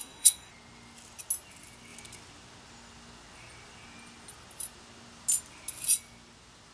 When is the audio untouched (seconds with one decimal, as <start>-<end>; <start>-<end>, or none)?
0.5-6.7